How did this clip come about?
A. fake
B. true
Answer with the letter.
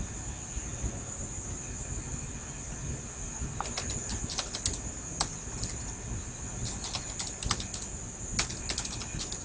B